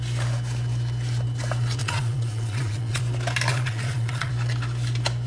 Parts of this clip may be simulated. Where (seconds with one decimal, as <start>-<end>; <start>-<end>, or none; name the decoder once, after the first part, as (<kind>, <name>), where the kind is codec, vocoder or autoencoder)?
1.8-3.0 (vocoder, Vocos); 3.5-4.3